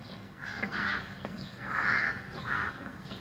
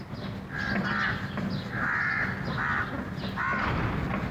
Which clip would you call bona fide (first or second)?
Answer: second